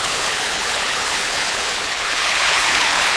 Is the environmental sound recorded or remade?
remade